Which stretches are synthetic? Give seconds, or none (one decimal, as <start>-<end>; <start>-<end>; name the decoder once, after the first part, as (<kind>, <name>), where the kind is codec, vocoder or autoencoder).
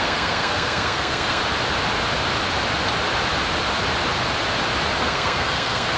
0.0-1.4 (codec, SNAC); 5.0-6.0